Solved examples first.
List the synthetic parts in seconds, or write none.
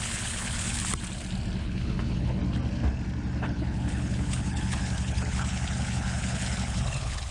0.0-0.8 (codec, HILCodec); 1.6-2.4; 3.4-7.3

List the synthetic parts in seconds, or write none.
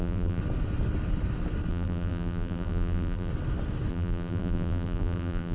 0.0-0.4 (vocoder, BigVGAN v2); 1.7-3.3; 3.9-5.5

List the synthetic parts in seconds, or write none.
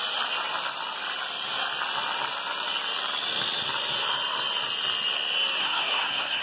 5.6-6.4 (codec, SNAC)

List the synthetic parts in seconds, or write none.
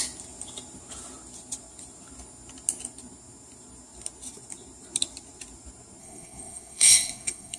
6.0-7.6 (codec, SNAC)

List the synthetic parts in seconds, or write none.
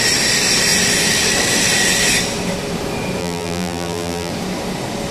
3.2-4.3 (vocoder, BigVGAN v2)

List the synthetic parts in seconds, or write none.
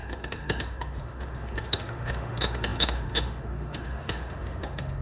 0.0-5.0 (autoencoder, DAC-VAE)